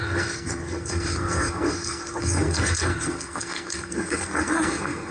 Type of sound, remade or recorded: remade